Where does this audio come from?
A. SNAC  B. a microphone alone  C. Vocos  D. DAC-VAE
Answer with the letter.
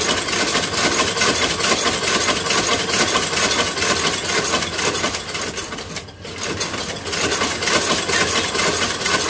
B